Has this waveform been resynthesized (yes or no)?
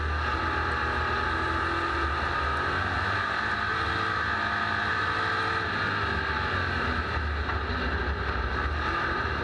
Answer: no